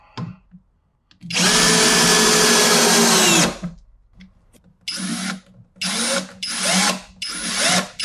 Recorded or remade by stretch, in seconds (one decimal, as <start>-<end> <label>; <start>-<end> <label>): 0.0-8.0 recorded